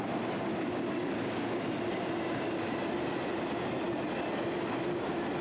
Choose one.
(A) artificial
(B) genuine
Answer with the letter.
B